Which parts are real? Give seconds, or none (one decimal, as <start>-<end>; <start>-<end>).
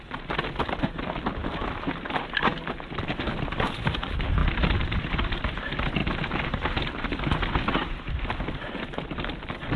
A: 0.0-9.8